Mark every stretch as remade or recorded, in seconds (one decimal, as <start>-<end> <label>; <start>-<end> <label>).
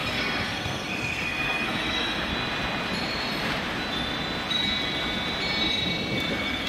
0.0-2.3 remade; 2.3-6.3 recorded; 6.3-6.7 remade